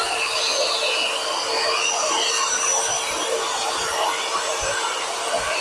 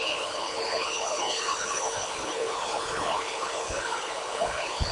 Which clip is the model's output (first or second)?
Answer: second